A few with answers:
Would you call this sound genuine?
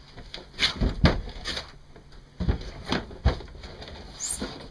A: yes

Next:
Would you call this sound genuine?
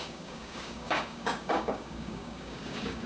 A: no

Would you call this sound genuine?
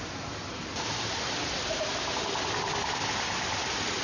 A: yes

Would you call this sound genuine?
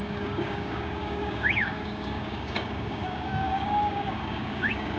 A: no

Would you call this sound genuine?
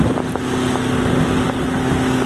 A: yes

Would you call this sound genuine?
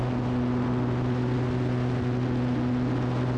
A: yes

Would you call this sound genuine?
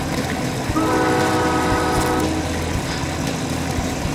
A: yes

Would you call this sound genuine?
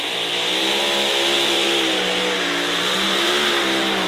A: no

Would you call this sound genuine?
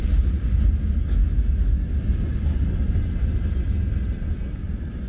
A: yes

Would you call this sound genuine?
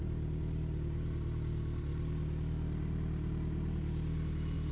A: yes